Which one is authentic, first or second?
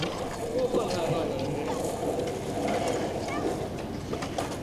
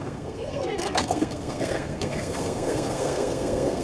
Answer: first